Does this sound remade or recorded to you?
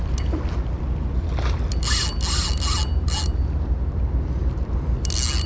recorded